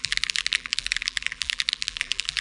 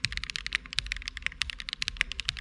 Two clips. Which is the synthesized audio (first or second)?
first